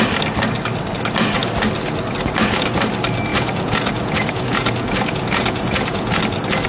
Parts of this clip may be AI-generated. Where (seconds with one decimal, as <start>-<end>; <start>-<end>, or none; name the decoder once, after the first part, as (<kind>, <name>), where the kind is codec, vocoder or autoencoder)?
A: 3.3-6.2 (vocoder, Vocos)